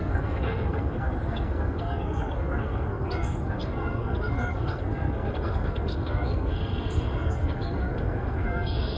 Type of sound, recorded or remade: remade